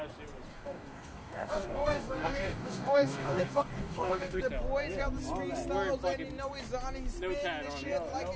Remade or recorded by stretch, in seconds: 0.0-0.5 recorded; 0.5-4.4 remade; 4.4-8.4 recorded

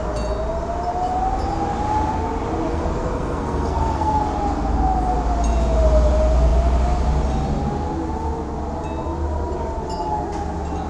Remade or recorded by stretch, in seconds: 0.0-2.7 recorded; 2.7-4.2 remade; 4.2-10.9 recorded

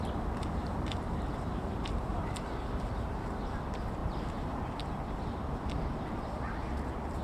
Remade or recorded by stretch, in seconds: 0.0-0.6 recorded; 0.6-3.3 remade; 3.3-4.0 recorded; 4.0-4.7 remade; 4.7-7.2 recorded

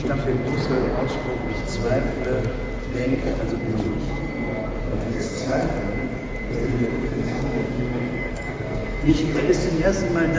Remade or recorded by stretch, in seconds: 0.0-2.8 recorded; 2.8-3.4 remade; 3.4-4.8 recorded; 4.8-5.7 remade; 5.7-6.9 recorded; 6.9-9.8 remade; 9.8-10.4 recorded

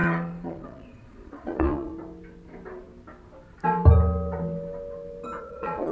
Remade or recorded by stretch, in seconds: 0.0-1.9 remade; 1.9-5.4 recorded; 5.4-5.9 remade

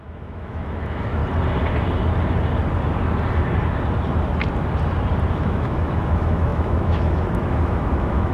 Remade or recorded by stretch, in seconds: 0.0-1.2 remade; 1.2-5.3 recorded; 5.3-8.3 remade

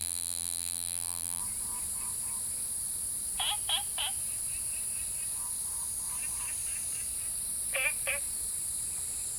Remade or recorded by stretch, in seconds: 0.0-1.4 remade; 1.4-9.4 recorded

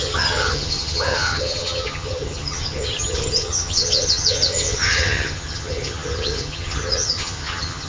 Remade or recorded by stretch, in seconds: 0.0-7.9 remade